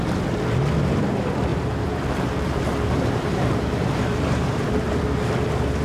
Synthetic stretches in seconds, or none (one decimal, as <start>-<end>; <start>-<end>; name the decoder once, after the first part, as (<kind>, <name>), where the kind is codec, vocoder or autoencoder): 1.5-5.0 (vocoder, BigVGAN v2)